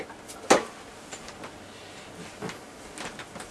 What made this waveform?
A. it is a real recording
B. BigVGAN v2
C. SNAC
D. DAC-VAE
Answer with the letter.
A